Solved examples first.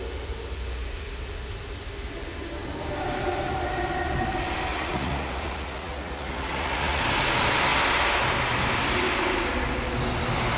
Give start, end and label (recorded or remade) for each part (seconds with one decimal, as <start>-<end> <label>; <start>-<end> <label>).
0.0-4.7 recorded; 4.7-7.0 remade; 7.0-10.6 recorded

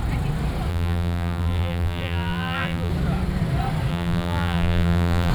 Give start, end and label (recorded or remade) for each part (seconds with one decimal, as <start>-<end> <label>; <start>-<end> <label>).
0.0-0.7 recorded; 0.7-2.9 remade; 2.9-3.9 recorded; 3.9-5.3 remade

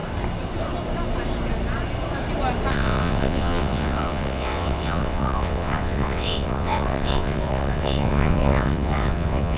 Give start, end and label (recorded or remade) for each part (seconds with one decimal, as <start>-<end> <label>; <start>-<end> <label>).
0.0-2.7 recorded; 2.7-9.6 remade

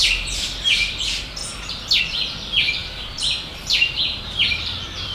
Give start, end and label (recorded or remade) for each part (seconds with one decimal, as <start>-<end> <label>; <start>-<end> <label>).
0.0-1.4 remade; 1.4-2.0 recorded; 2.0-5.1 remade

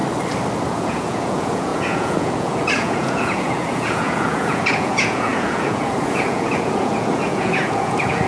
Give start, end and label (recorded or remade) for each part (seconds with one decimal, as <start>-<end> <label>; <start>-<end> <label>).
0.0-0.7 recorded; 0.7-8.3 remade

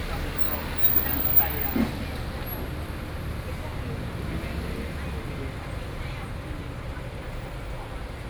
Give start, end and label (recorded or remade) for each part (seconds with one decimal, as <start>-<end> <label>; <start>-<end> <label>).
0.0-8.3 recorded

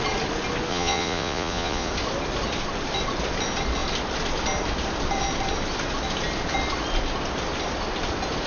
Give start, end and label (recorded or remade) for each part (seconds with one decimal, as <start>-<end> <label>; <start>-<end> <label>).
0.0-0.7 recorded; 0.7-1.9 remade; 1.9-8.5 recorded

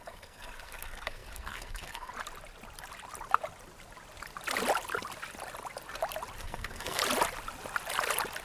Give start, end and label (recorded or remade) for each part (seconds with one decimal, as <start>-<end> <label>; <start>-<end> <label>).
0.0-2.1 remade; 2.1-6.4 recorded; 6.4-7.0 remade; 7.0-8.4 recorded